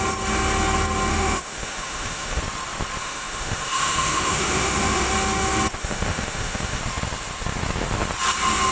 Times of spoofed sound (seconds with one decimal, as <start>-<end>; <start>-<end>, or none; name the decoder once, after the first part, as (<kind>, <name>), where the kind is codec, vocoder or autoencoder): 1.1-2.4 (autoencoder, DAC-VAE); 3.0-5.1; 5.8-6.8